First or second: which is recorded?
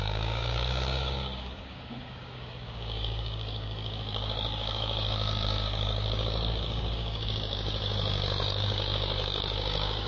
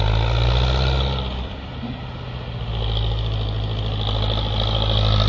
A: second